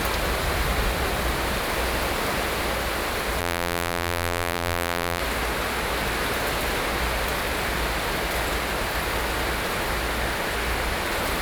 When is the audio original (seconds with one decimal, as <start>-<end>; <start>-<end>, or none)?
0.0-3.4; 5.2-11.4